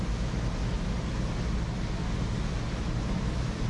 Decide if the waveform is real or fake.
real